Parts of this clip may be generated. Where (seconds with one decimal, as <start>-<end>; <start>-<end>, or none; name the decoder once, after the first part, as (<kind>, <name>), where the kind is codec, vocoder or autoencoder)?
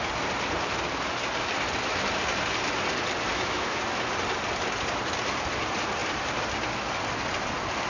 3.3-3.8 (autoencoder, DAC-VAE)